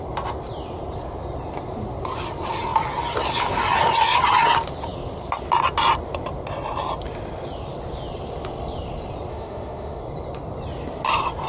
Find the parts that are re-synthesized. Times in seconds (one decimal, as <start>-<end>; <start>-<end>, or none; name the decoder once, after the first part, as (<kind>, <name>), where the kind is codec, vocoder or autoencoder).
9.3-10.0 (autoencoder, DAC-VAE)